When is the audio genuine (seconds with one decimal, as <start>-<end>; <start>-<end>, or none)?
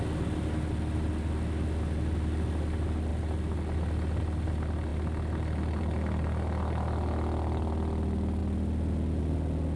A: 0.0-9.8